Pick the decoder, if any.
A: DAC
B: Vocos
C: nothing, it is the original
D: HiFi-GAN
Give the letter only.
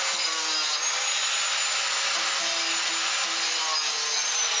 C